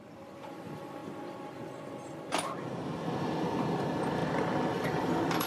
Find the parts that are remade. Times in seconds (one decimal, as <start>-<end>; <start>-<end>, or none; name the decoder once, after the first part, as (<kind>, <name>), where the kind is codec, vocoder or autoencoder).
0.0-1.0 (vocoder, BigVGAN v2); 3.2-4.2; 4.7-5.5